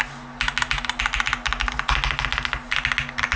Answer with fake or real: real